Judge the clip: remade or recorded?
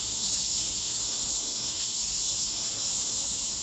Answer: remade